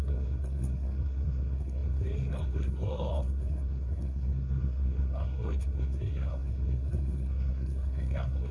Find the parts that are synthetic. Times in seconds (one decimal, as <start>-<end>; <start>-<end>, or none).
0.0-8.5